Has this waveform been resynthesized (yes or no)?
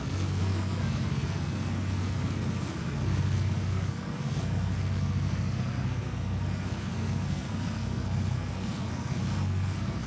yes